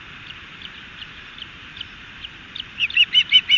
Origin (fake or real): fake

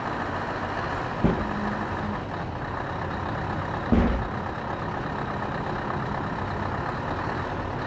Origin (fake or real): real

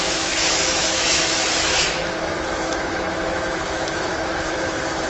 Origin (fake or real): fake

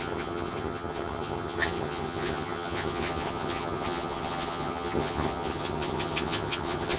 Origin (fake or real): fake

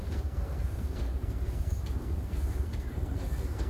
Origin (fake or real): fake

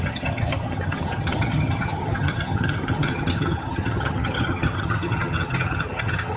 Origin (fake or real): fake